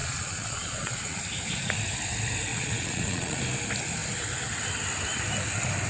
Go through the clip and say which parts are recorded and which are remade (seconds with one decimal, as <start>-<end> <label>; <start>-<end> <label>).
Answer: 0.0-1.2 remade; 1.2-2.5 recorded; 2.5-3.4 remade; 3.4-5.9 recorded